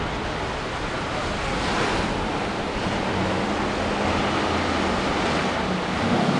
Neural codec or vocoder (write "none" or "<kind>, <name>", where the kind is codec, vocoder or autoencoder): none